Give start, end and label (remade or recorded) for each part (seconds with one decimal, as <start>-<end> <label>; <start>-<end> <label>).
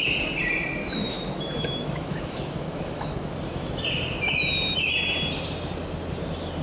0.0-0.8 recorded; 0.8-3.7 remade; 3.7-6.6 recorded